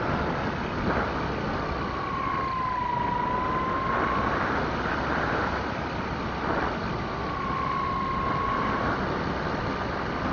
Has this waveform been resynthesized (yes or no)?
no